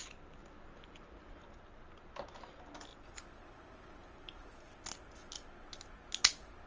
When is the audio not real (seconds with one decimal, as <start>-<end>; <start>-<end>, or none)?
0.4-1.3; 2.9-4.5